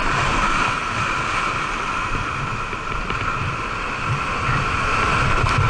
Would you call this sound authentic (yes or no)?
yes